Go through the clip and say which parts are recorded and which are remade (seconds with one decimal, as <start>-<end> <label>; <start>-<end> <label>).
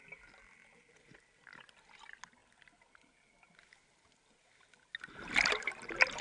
0.0-6.2 recorded